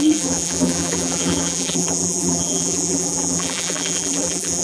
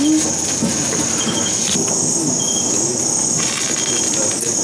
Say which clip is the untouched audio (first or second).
second